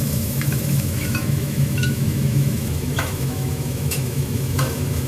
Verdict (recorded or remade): remade